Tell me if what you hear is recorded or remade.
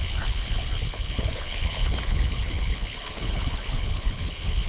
remade